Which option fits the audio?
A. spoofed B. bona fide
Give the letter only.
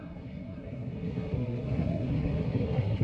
A